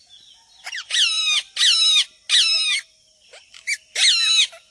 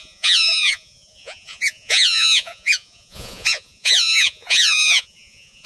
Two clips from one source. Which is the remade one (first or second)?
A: second